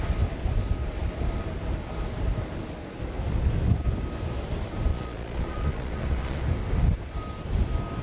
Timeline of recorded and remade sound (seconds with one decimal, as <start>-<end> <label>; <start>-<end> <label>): 0.0-4.9 recorded; 4.9-6.4 remade; 6.4-8.0 recorded